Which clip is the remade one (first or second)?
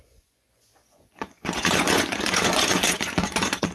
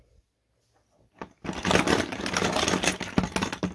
first